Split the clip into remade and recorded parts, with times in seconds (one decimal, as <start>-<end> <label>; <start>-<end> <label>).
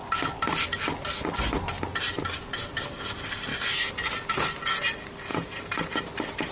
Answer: 0.0-5.3 recorded; 5.3-5.9 remade; 5.9-6.5 recorded